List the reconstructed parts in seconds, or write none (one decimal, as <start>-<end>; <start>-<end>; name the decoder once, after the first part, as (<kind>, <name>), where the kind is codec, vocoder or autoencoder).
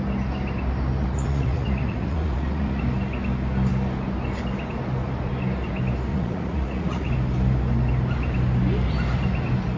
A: 1.0-2.8 (vocoder, Vocos); 6.1-7.1